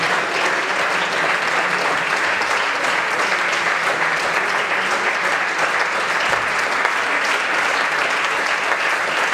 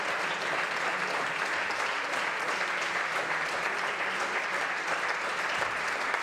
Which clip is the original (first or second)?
first